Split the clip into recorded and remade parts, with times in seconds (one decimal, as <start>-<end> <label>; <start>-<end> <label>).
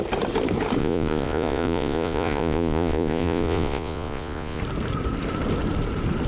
0.0-0.8 recorded; 0.8-4.6 remade; 4.6-6.3 recorded